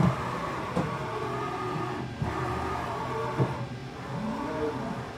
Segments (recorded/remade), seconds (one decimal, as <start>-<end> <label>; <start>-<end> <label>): 0.0-1.1 recorded; 1.1-3.2 remade; 3.2-3.8 recorded; 3.8-4.7 remade; 4.7-5.2 recorded